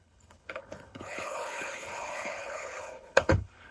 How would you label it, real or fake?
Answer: fake